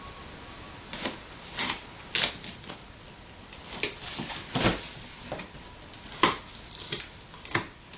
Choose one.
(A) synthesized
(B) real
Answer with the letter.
B